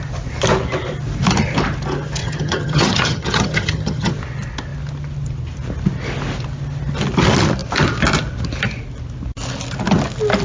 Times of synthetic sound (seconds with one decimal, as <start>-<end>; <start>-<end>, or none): 2.2-4.1